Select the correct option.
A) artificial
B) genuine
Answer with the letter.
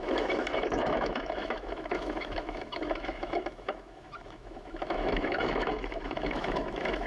A